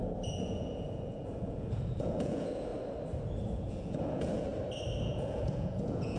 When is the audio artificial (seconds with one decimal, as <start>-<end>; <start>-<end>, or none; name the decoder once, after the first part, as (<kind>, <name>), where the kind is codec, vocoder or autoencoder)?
0.0-2.7 (vocoder, Vocos); 3.4-4.5; 5.0-6.2